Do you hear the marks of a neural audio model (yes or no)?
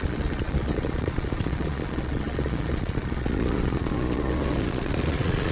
yes